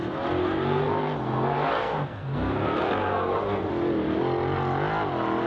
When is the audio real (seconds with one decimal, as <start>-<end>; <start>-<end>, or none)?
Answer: 0.0-0.4; 3.7-5.5